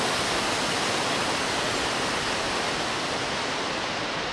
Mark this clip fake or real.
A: real